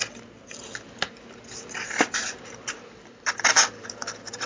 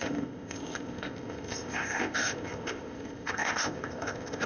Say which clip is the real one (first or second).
first